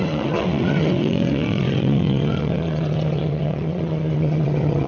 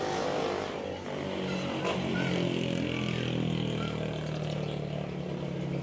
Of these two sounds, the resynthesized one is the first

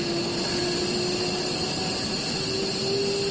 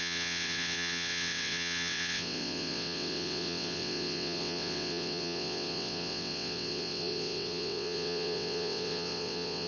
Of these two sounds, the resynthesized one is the second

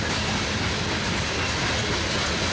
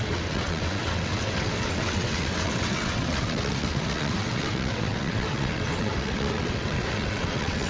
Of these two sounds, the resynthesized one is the second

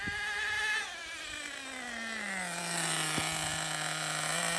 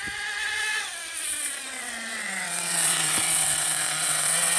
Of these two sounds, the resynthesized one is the second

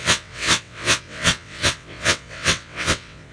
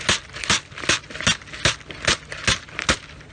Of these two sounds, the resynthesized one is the first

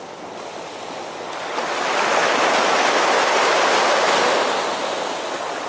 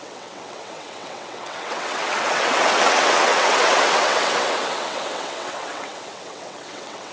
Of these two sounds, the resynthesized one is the second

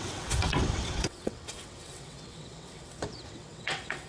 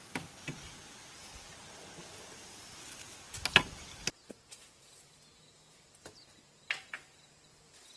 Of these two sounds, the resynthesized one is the first